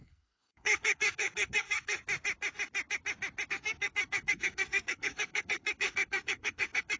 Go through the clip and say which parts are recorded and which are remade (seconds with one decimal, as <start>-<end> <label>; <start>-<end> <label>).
0.0-2.0 remade; 2.0-3.5 recorded; 3.5-7.0 remade